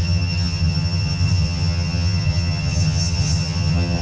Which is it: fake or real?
fake